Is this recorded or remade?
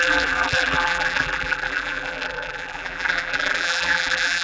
remade